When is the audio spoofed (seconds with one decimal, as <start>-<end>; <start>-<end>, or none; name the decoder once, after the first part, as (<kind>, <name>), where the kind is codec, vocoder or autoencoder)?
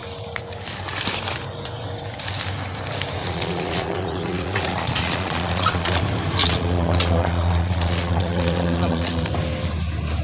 3.2-6.0 (vocoder, Vocos); 6.4-9.3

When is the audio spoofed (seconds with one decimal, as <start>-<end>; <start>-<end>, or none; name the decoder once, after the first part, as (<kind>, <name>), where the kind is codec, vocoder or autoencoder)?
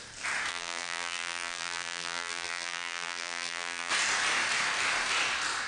0.5-3.9 (vocoder, BigVGAN v2)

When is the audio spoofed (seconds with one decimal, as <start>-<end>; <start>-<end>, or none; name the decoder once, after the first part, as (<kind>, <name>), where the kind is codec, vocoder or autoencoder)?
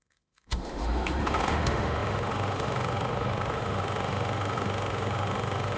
0.0-5.8 (autoencoder, DAC-VAE)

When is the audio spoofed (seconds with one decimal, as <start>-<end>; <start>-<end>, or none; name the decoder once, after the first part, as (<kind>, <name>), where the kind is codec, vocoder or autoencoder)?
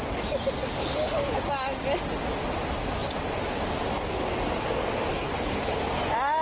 0.8-1.4 (codec, HILCodec); 5.1-5.8